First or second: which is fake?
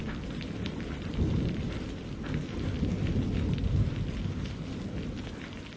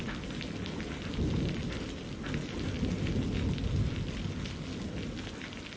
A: first